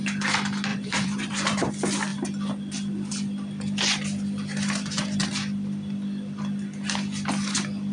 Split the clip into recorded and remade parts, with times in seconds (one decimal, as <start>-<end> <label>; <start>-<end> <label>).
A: 0.0-0.7 recorded; 0.7-1.7 remade; 1.7-7.9 recorded

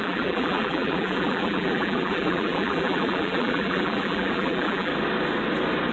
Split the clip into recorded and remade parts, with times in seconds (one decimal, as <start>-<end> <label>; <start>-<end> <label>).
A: 0.0-4.9 remade; 4.9-5.9 recorded